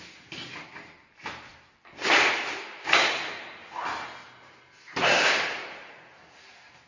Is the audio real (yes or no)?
no